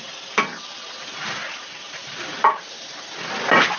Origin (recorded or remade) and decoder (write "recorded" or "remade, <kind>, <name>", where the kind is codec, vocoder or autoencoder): recorded